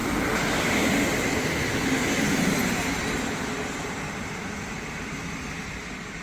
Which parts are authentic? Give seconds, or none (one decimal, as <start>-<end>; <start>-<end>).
0.0-6.2